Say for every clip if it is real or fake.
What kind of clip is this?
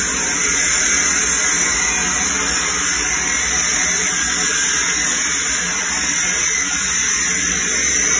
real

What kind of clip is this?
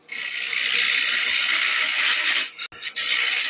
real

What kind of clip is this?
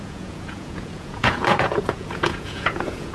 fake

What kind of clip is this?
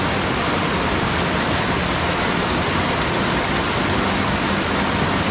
real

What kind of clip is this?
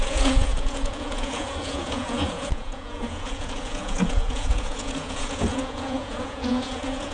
fake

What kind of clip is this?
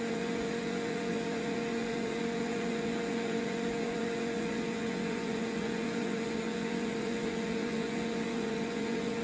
fake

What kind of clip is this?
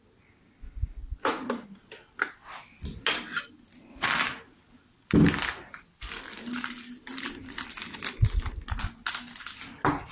real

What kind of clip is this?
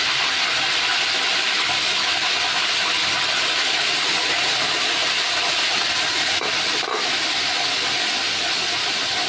real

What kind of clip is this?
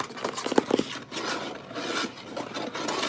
real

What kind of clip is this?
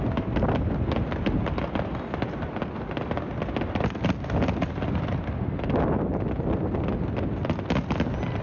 real